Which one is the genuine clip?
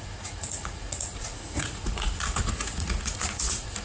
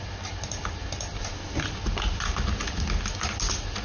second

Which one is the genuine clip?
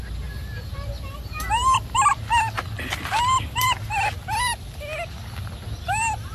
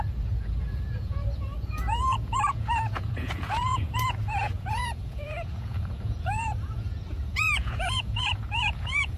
first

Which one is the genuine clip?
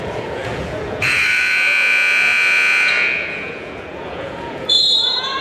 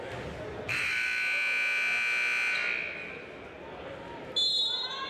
second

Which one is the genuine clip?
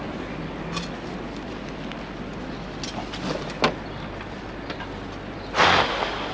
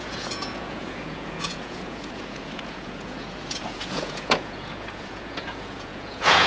first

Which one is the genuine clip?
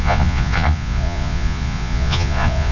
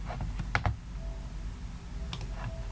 second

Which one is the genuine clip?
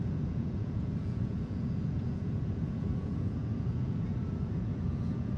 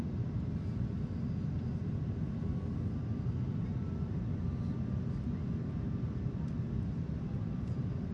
second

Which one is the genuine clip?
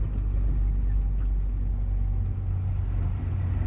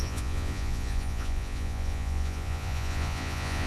first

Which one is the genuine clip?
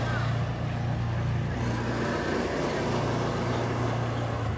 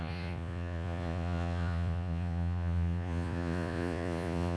first